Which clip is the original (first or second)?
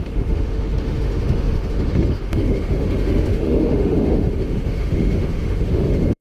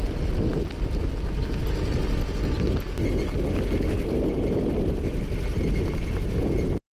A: second